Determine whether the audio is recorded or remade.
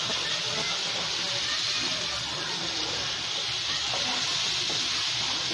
recorded